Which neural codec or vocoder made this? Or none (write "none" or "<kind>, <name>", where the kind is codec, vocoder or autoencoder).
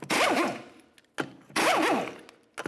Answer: none